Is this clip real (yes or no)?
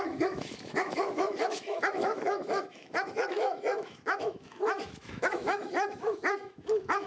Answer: no